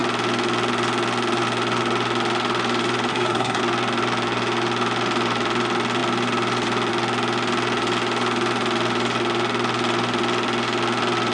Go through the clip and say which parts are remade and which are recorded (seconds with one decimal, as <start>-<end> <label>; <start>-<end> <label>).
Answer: 0.0-3.1 recorded; 3.1-3.6 remade; 3.6-11.3 recorded